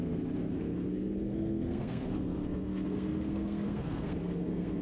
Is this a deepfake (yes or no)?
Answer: yes